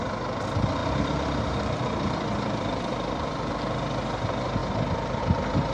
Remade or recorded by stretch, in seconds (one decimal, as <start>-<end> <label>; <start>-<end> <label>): 0.0-0.8 recorded; 0.8-3.8 remade; 3.8-5.7 recorded